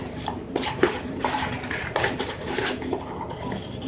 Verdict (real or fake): fake